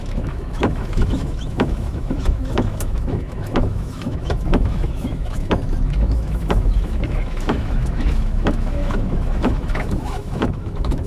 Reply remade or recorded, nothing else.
remade